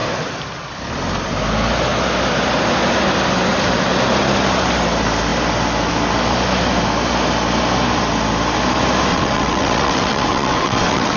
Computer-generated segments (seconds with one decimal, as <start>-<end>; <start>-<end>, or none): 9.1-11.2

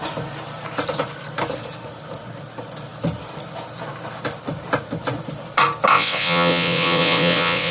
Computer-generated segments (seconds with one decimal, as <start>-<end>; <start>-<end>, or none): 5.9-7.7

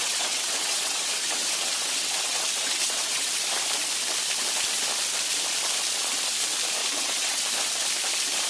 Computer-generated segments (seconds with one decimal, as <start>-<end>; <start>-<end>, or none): 0.0-3.4; 6.8-7.4

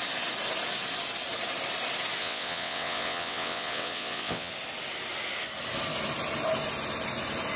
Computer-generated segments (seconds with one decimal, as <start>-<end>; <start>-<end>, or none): 2.2-4.5

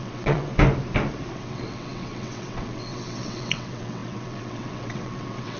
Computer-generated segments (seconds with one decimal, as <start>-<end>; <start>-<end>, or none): 0.0-0.5; 1.3-5.6